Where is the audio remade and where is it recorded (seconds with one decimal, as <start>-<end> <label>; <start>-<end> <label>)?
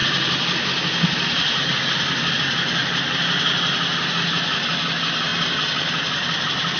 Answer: 0.0-6.8 recorded